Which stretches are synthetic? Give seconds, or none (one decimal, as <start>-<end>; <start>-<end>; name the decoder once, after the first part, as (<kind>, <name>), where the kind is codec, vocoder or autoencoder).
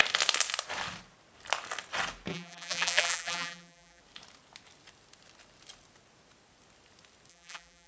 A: 2.3-4.0 (vocoder, BigVGAN v2); 7.3-7.9